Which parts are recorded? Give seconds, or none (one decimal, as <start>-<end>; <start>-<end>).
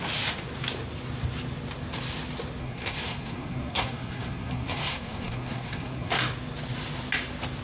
0.0-2.6; 6.1-7.6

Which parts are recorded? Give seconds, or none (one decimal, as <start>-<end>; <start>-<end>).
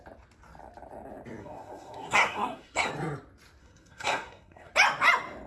0.0-1.4; 2.9-3.6; 4.7-5.5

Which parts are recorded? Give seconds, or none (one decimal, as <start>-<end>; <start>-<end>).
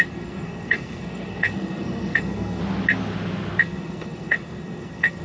2.6-3.6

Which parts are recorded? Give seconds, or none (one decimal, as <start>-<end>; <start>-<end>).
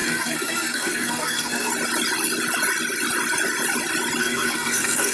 1.7-4.2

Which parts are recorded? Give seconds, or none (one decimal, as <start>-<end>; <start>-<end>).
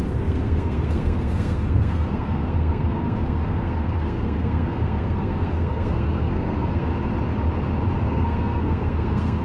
6.9-8.1